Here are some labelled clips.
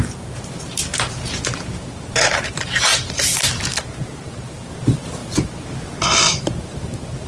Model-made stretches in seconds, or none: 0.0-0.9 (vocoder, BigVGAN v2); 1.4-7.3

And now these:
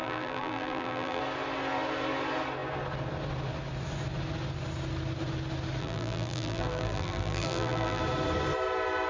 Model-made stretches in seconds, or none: 0.0-1.2 (vocoder, BigVGAN v2); 5.8-8.0

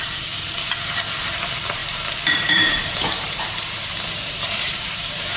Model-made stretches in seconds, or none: 0.0-5.4 (vocoder, BigVGAN v2)

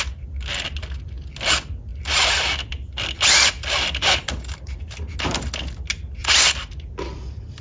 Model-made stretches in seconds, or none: 1.9-4.8 (vocoder, BigVGAN v2); 6.2-6.7